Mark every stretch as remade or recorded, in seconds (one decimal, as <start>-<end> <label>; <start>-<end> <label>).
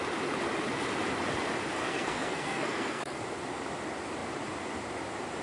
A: 0.0-1.8 recorded; 1.8-3.2 remade; 3.2-5.4 recorded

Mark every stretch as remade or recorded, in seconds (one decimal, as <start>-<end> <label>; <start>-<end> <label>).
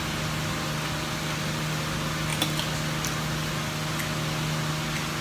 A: 0.0-5.2 recorded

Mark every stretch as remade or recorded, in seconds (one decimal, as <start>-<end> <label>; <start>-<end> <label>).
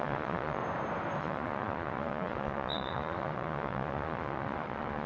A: 0.0-0.6 remade; 0.6-1.2 recorded; 1.2-5.1 remade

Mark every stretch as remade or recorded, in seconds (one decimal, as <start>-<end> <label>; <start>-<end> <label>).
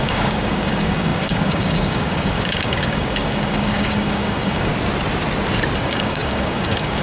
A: 0.0-4.7 remade; 4.7-5.8 recorded; 5.8-7.0 remade